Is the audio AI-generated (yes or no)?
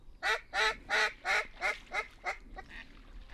no